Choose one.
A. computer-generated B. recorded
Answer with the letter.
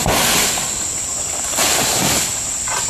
B